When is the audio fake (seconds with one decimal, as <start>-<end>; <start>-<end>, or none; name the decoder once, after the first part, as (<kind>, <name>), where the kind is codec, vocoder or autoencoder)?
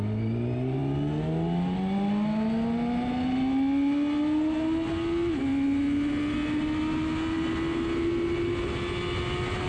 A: none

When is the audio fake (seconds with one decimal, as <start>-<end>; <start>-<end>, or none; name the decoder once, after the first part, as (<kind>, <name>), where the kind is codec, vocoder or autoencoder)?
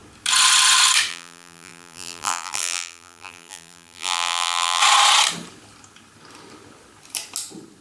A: 1.1-4.8 (vocoder, BigVGAN v2)